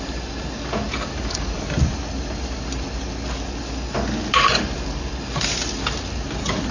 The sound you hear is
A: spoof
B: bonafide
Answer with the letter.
B